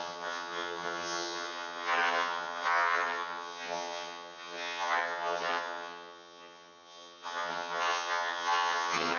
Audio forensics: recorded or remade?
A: remade